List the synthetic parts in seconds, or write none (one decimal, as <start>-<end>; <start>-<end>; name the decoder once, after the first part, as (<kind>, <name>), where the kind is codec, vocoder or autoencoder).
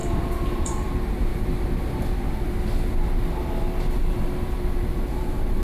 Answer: 0.0-1.3 (vocoder, BigVGAN v2); 4.7-5.6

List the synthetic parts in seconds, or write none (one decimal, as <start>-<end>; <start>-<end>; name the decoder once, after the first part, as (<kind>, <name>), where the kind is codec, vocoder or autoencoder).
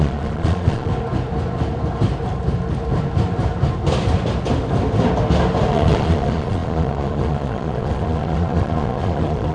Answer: 0.0-0.9 (vocoder, Vocos); 5.7-9.5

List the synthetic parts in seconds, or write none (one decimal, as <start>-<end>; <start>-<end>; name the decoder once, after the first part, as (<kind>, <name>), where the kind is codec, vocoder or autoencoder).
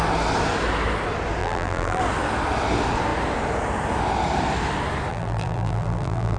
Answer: 1.4-2.0 (vocoder, BigVGAN v2); 5.1-6.4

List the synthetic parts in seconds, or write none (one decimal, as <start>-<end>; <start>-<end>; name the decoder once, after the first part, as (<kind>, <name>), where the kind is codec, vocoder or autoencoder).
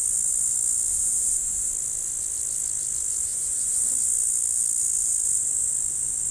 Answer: 0.9-1.7 (vocoder, Vocos); 3.3-3.8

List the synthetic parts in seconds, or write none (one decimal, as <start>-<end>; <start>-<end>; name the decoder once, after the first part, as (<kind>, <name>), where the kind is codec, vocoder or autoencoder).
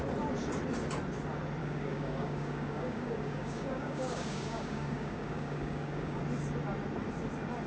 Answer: 1.6-6.2 (codec, DAC)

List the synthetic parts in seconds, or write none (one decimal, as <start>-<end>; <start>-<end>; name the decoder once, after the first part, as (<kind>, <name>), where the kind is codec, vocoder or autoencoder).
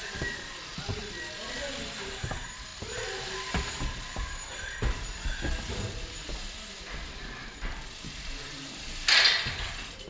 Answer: none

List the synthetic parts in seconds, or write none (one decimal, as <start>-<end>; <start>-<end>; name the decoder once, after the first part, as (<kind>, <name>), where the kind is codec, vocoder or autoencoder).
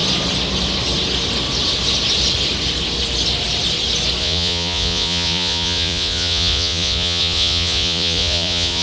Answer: 4.2-8.8 (vocoder, Vocos)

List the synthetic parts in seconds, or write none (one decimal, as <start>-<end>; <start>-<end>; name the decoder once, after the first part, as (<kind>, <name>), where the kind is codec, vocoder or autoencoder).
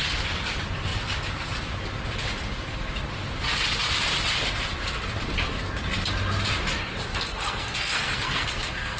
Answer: 7.1-9.0 (codec, SNAC)